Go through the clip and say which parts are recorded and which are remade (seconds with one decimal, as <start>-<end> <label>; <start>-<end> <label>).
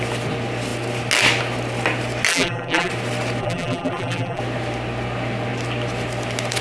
0.0-2.3 recorded; 2.3-2.9 remade; 2.9-3.4 recorded; 3.4-4.4 remade; 4.4-6.6 recorded